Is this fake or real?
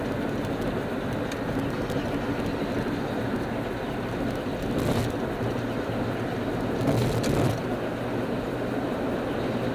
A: real